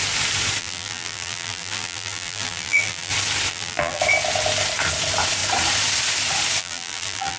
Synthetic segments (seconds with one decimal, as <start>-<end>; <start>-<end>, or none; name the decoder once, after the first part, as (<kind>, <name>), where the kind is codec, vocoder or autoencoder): 0.6-3.1 (vocoder, BigVGAN v2); 3.5-4.0; 6.6-7.4